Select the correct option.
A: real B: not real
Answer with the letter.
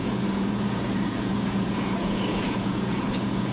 B